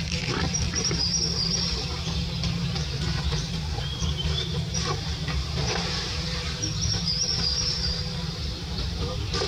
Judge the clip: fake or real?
fake